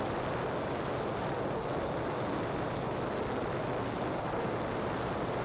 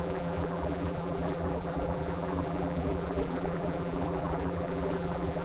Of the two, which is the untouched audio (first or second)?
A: first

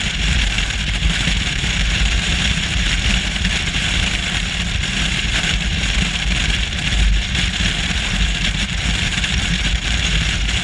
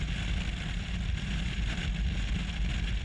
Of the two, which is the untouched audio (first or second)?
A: second